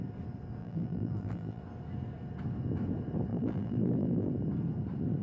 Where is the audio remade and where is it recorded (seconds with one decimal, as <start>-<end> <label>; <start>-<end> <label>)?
0.0-0.6 recorded; 0.6-1.6 remade; 1.6-3.3 recorded; 3.3-4.3 remade; 4.3-5.2 recorded